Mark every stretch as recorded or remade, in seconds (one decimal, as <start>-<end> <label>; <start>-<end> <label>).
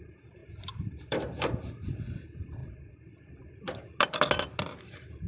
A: 0.0-2.6 remade; 2.6-4.6 recorded; 4.6-5.3 remade